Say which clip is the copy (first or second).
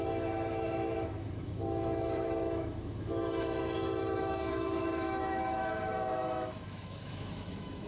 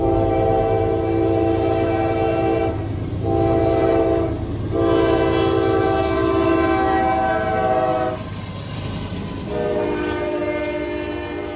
first